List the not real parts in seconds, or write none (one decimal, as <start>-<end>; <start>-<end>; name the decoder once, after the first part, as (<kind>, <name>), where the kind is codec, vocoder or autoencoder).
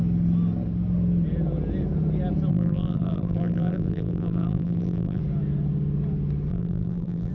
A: 2.5-5.2 (vocoder, BigVGAN v2); 6.5-7.3